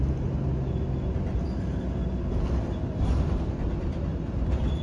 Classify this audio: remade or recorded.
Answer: recorded